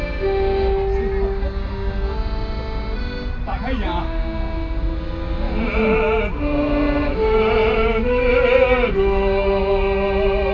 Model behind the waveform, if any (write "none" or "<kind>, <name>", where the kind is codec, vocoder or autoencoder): none